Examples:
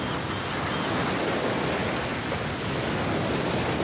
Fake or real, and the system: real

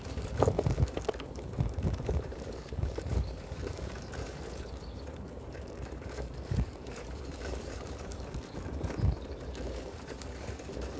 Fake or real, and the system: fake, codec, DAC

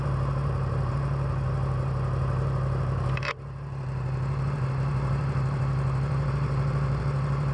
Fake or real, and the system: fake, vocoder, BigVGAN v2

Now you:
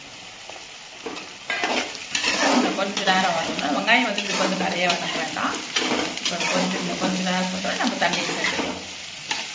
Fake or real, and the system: fake, vocoder, BigVGAN v2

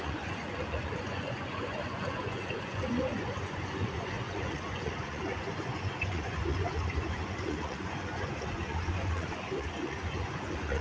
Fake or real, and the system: fake, vocoder, Vocos